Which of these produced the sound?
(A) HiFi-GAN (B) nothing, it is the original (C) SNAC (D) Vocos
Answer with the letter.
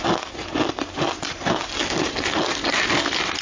B